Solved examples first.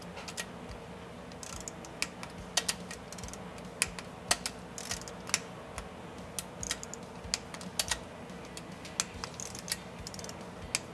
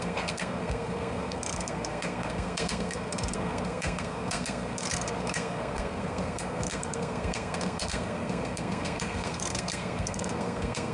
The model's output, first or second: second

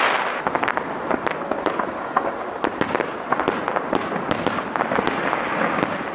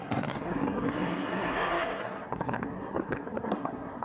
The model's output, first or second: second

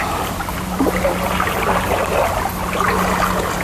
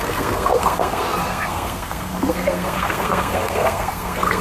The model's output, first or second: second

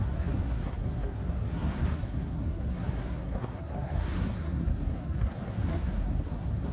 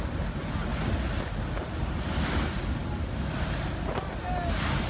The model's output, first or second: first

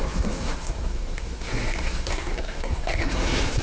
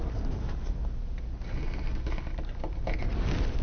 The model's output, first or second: first